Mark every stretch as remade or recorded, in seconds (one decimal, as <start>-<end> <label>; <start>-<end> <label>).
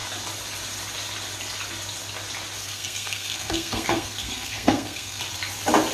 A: 0.0-2.6 recorded; 2.6-5.2 remade; 5.2-5.9 recorded